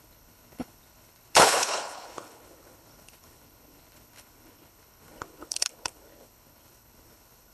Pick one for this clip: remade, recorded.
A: remade